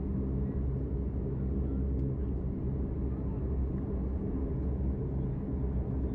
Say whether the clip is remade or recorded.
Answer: recorded